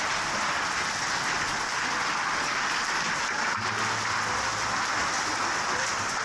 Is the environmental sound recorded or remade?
recorded